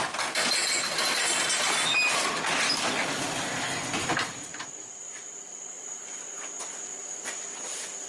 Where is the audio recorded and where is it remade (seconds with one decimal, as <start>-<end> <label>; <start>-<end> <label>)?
0.0-4.0 recorded; 4.0-6.3 remade; 6.3-8.1 recorded

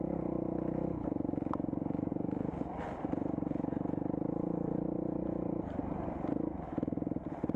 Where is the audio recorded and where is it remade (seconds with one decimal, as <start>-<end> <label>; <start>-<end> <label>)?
0.0-2.1 recorded; 2.1-6.3 remade; 6.3-7.6 recorded

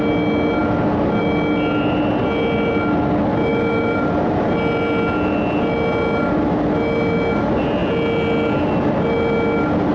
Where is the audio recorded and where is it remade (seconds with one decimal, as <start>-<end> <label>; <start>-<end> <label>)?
0.0-3.5 recorded; 3.5-4.4 remade; 4.4-9.9 recorded

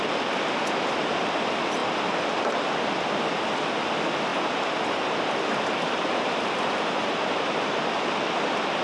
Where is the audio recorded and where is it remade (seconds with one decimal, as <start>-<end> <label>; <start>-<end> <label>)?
0.0-1.8 recorded; 1.8-3.2 remade; 3.2-4.3 recorded; 4.3-8.8 remade